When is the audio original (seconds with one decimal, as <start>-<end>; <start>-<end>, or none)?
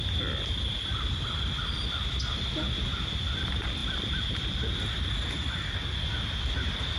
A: 0.0-7.0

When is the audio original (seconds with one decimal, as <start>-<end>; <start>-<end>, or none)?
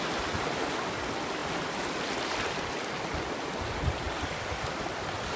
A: 0.0-5.4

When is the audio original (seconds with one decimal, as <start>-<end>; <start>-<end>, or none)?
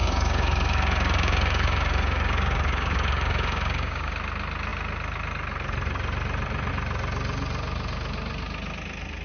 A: 4.1-9.2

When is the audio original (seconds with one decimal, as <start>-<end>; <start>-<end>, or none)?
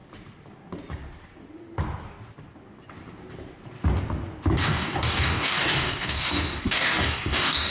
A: 0.0-4.6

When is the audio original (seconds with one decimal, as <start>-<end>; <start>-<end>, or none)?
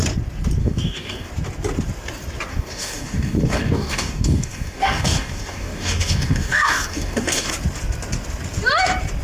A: 0.0-0.6; 1.3-2.5; 7.5-9.2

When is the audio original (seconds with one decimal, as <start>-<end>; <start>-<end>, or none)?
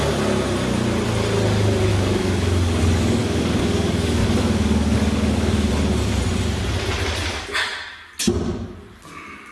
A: 0.0-1.9; 2.8-3.2; 5.7-9.5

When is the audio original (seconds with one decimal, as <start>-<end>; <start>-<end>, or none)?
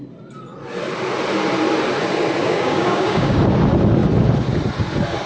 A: 0.0-2.4; 3.4-5.3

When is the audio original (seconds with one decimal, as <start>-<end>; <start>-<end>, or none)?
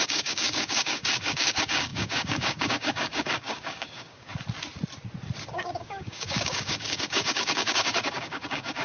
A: 4.3-5.5